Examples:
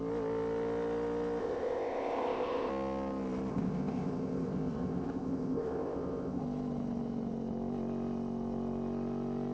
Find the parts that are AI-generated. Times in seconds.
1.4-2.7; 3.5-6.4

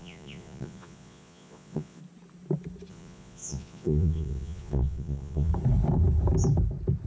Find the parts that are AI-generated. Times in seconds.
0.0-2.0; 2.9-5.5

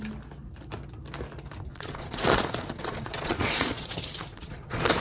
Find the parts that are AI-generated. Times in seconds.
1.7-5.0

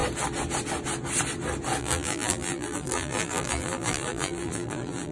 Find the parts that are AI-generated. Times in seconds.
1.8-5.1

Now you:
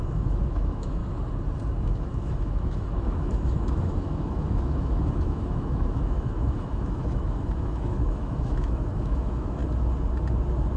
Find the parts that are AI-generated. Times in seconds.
0.0-1.0; 1.8-9.6